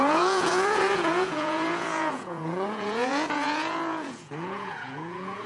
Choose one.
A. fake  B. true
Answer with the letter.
A